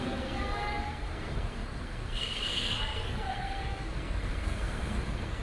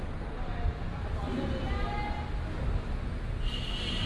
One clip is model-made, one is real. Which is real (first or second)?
second